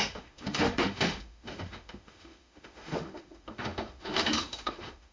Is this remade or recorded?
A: remade